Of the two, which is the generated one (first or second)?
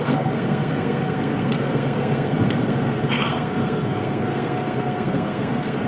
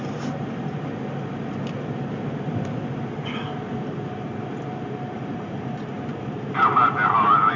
first